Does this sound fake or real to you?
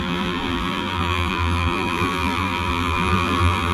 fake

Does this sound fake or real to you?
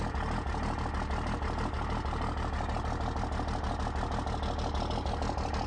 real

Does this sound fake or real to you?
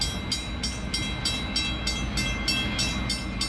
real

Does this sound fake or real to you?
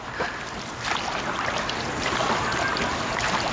real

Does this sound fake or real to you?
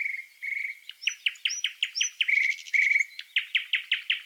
real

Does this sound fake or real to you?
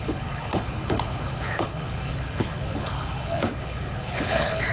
fake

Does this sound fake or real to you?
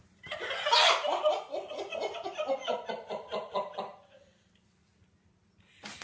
real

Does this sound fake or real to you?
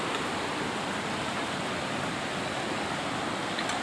real